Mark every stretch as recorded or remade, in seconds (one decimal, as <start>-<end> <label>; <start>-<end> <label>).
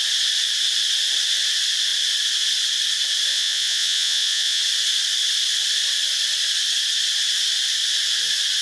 0.0-3.3 recorded; 3.3-4.6 remade; 4.6-8.6 recorded